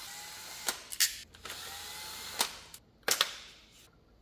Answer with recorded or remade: recorded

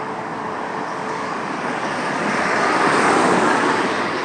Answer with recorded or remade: remade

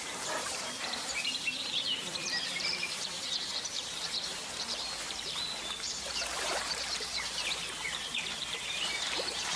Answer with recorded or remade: remade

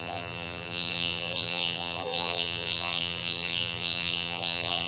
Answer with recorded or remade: remade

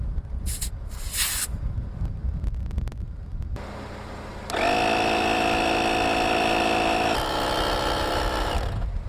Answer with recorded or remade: recorded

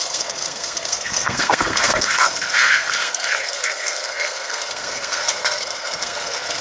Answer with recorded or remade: remade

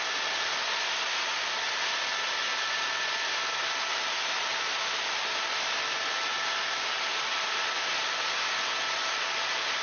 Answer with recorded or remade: recorded